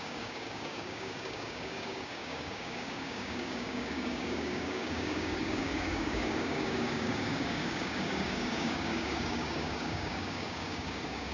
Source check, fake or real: fake